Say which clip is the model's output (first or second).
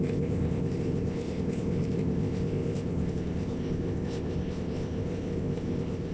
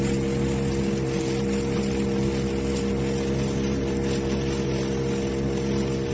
first